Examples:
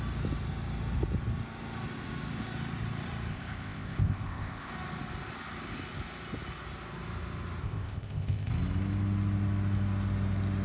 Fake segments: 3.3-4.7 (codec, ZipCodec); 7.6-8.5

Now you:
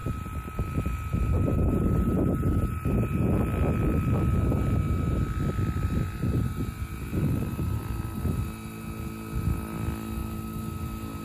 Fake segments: 7.1-7.8 (vocoder, BigVGAN v2)

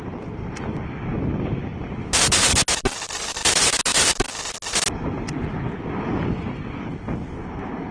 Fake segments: none

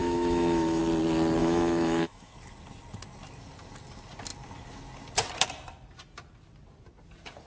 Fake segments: 0.0-0.8 (autoencoder, DAC-VAE); 1.4-2.3

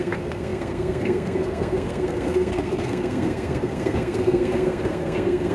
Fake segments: 0.0-5.5 (codec, SNAC)

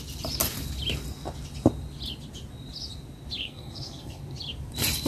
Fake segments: 3.4-4.2 (codec, SNAC)

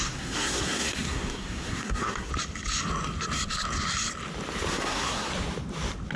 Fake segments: 0.0-2.3 (codec, SNAC); 4.7-5.3

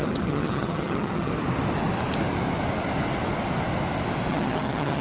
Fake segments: 0.0-1.3 (vocoder, HiFi-GAN); 4.3-5.0